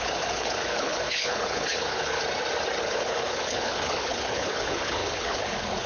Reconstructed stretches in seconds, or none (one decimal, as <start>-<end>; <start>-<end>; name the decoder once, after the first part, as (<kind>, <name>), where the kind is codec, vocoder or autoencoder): 0.0-2.2 (codec, HILCodec); 2.8-5.9